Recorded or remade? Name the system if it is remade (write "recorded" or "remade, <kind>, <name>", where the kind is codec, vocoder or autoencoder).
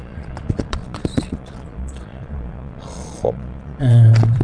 remade, vocoder, Vocos